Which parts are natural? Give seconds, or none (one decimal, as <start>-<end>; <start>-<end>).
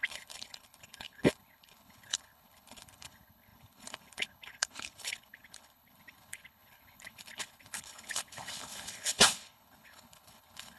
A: none